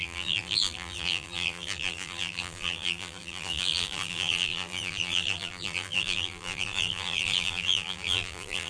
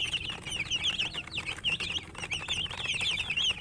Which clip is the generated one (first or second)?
first